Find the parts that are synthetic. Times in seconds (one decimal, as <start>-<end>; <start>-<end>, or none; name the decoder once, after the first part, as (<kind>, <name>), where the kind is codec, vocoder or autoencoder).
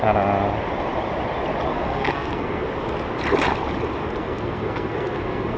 1.7-2.6 (codec, SNAC); 4.0-5.6